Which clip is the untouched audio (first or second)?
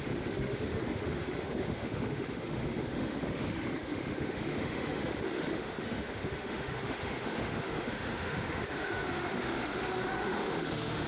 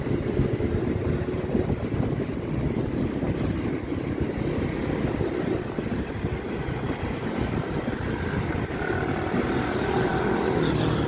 second